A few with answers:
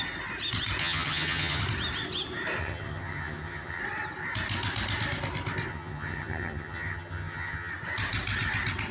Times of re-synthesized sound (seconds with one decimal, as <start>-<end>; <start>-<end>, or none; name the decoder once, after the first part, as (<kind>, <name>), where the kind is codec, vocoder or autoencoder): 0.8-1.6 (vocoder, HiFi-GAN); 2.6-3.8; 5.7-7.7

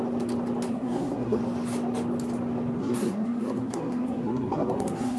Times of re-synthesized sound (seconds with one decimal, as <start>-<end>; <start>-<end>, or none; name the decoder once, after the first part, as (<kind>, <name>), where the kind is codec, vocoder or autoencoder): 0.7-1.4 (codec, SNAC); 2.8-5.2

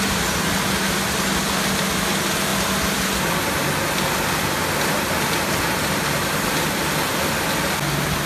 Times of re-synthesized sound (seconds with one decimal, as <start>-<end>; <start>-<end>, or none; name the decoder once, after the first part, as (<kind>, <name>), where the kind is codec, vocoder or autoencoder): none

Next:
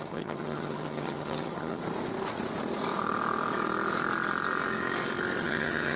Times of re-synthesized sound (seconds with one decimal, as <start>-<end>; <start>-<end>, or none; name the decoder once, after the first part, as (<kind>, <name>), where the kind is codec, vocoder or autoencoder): 0.0-1.8 (vocoder, HiFi-GAN); 5.4-6.0